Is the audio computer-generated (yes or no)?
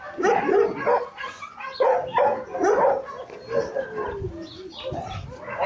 no